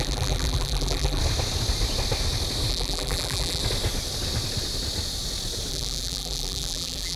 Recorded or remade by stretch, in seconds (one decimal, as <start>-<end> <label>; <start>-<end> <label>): 0.0-1.2 remade; 1.2-2.7 recorded; 2.7-3.6 remade; 3.6-5.7 recorded; 5.7-7.2 remade